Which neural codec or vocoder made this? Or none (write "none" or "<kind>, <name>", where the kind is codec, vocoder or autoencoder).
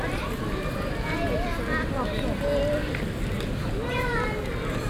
none